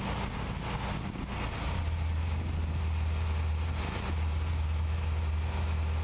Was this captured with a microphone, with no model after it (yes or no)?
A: yes